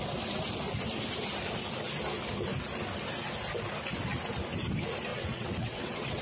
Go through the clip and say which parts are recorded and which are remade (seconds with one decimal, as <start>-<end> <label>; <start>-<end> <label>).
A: 0.0-5.1 recorded; 5.1-6.2 remade